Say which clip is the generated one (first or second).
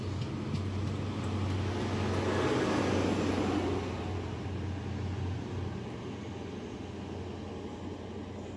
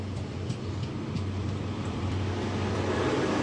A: second